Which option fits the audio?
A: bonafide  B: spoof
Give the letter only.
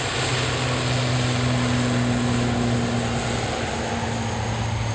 A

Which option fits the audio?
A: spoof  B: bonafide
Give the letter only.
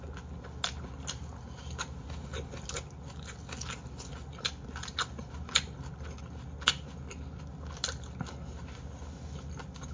B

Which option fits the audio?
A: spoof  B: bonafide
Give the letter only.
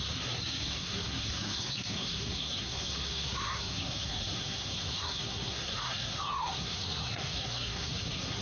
A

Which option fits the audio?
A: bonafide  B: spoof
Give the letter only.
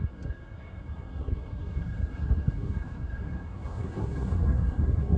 B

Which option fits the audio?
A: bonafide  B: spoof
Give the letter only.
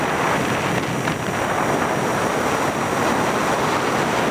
A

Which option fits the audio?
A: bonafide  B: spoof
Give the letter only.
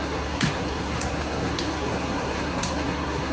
B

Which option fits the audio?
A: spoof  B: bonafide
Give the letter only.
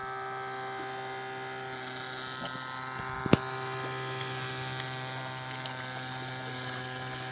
B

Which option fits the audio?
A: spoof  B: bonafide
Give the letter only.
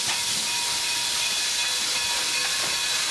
B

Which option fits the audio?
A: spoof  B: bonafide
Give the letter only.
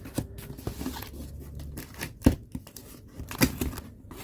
B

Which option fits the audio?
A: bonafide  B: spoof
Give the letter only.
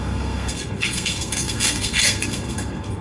B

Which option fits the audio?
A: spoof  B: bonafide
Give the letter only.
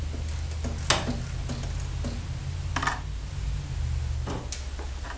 B